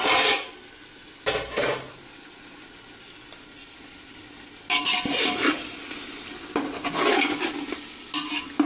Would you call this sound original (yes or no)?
yes